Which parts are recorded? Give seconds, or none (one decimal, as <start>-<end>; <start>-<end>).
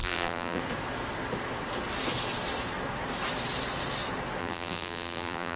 0.6-4.4